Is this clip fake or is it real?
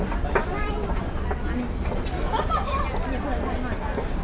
real